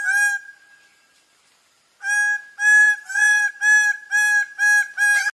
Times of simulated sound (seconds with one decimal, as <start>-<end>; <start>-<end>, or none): 2.8-3.5